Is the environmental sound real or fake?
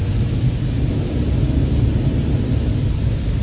real